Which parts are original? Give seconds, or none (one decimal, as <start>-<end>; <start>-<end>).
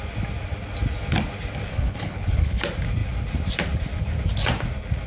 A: 0.0-1.7; 2.6-5.1